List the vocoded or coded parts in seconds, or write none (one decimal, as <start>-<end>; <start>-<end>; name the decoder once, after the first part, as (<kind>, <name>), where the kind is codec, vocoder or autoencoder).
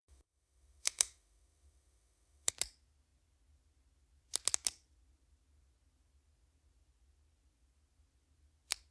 0.0-2.5 (autoencoder, DAC-VAE)